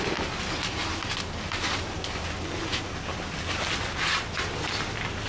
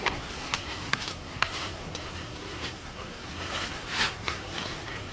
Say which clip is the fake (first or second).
second